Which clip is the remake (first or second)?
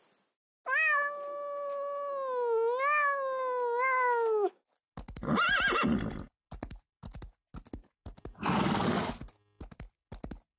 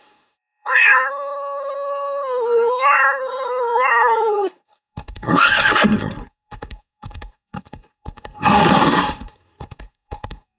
second